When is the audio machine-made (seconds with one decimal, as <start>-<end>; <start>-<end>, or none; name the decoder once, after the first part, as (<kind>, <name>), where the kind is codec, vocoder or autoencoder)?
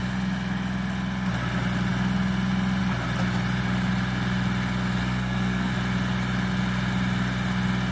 5.0-5.7 (codec, SNAC)